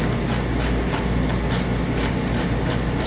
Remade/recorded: recorded